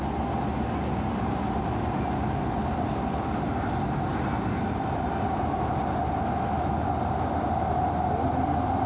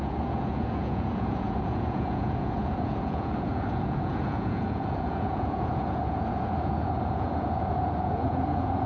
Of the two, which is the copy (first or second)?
second